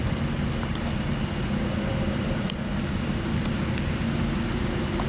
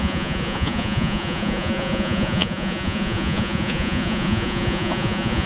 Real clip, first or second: first